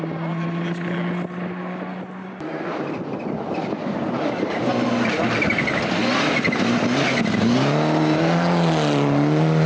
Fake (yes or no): no